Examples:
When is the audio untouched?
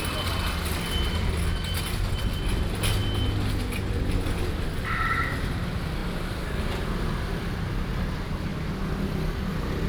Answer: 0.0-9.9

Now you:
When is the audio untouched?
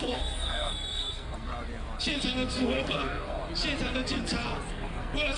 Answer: 1.5-2.0; 3.4-4.7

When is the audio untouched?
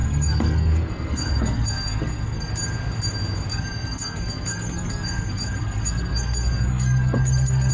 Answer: 2.5-3.5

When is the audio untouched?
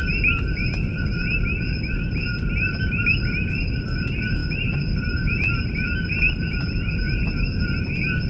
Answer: 0.0-8.3